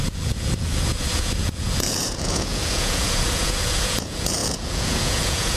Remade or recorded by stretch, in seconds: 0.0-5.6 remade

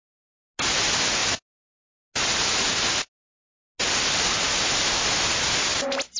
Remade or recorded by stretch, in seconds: 0.0-6.2 recorded